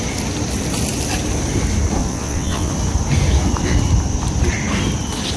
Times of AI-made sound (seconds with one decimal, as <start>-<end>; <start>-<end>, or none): 2.0-2.7